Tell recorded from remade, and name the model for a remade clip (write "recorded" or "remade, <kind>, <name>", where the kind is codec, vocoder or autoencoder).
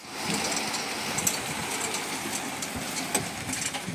recorded